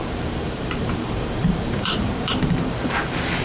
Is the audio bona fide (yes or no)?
no